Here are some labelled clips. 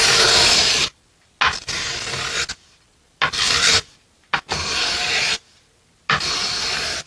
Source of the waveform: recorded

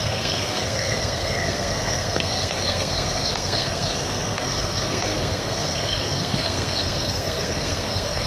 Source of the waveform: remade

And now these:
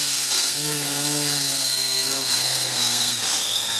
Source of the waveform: remade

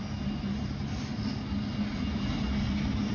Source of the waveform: recorded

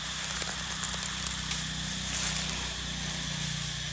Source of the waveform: recorded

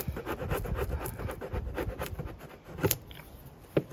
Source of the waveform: recorded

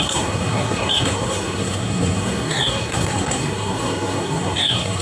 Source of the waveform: remade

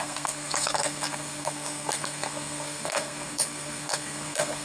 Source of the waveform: remade